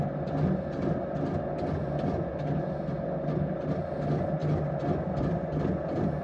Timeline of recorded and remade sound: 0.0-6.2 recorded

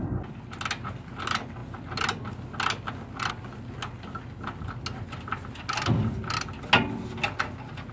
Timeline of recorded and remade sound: 0.0-7.9 recorded

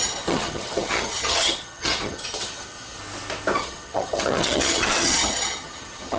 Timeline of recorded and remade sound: 0.0-3.0 remade; 3.0-3.6 recorded; 3.6-6.2 remade

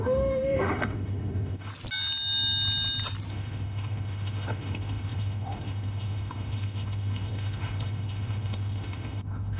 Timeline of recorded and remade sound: 0.0-1.7 remade; 1.7-3.3 recorded; 3.3-9.6 remade

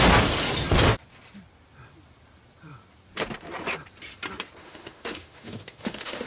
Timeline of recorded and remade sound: 0.0-4.6 recorded; 4.6-6.3 remade

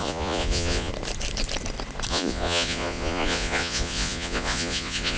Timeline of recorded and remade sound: 0.0-0.9 remade; 0.9-2.1 recorded; 2.1-5.2 remade